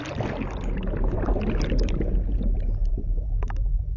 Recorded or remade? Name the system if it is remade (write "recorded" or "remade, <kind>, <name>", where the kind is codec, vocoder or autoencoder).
recorded